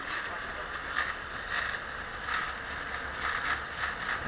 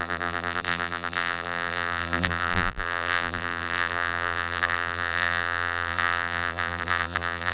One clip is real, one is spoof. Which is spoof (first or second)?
second